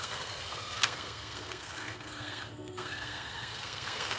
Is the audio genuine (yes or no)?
no